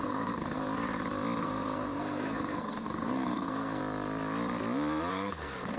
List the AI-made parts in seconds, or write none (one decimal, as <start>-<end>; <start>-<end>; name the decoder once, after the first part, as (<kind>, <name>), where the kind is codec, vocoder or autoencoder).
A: 0.0-0.6 (codec, SNAC); 1.4-3.8; 5.1-5.8